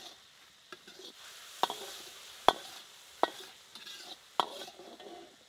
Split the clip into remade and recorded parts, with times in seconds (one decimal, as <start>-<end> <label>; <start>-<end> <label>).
0.0-5.5 recorded